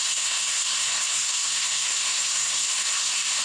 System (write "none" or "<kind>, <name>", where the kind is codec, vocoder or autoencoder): codec, SNAC